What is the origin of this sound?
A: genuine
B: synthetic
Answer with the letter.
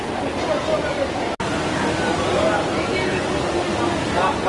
A